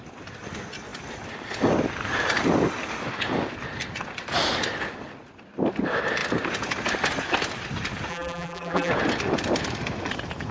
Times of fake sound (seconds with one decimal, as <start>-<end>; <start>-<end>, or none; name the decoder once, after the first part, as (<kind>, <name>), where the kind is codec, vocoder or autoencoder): 8.1-8.9 (vocoder, BigVGAN v2)